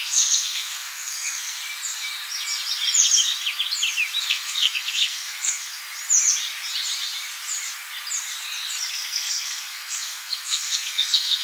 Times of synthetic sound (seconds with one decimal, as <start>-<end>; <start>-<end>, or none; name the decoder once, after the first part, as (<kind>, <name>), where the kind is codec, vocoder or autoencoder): 0.0-1.6 (codec, SNAC); 4.2-5.8; 8.9-11.4